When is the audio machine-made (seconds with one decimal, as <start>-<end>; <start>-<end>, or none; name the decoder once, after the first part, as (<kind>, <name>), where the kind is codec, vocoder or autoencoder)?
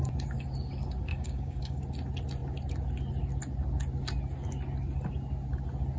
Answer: 1.1-1.8 (codec, DAC)